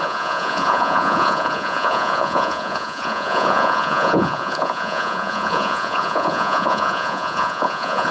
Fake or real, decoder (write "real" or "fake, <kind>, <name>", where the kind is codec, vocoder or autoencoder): fake, vocoder, Vocos